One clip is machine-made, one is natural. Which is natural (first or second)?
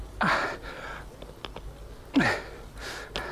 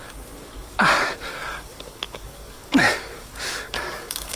first